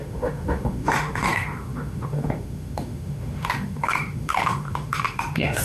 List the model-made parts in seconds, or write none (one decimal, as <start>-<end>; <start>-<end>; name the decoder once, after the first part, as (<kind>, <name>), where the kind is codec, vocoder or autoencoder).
0.0-5.6 (autoencoder, DAC-VAE)